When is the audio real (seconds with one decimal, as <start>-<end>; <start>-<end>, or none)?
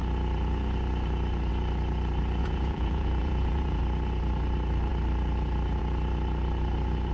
0.0-2.4; 3.8-7.1